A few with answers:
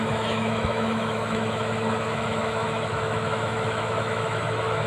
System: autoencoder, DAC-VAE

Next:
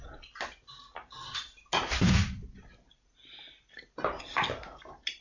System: none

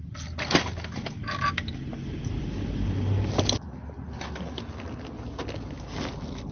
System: none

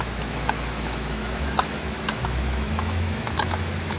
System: autoencoder, DAC-VAE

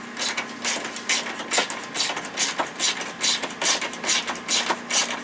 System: none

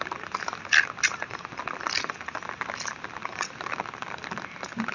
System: none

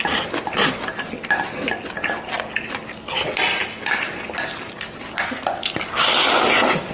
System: none